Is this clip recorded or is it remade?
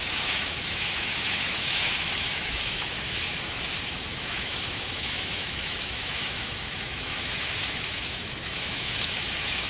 remade